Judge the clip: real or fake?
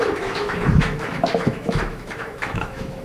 fake